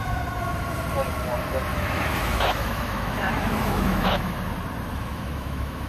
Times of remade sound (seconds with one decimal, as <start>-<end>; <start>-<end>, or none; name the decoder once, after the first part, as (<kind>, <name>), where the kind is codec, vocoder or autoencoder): 1.7-4.3 (autoencoder, DAC-VAE); 4.9-5.9